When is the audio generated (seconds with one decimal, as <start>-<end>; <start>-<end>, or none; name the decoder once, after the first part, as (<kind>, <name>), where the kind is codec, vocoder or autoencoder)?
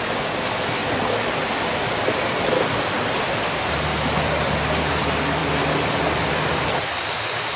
none